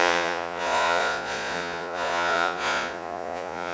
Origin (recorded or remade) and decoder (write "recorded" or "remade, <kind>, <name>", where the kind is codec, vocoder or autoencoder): remade, vocoder, Vocos